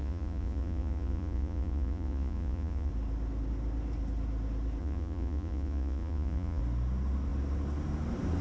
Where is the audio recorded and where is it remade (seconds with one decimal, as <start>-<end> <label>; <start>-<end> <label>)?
0.0-2.9 remade; 2.9-4.8 recorded; 4.8-6.6 remade; 6.6-8.4 recorded